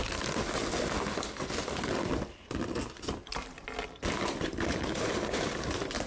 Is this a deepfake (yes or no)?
no